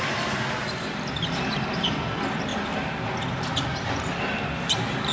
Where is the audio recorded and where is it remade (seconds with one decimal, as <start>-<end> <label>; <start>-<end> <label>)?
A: 0.0-5.1 recorded